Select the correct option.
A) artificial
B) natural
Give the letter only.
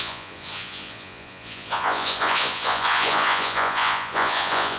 A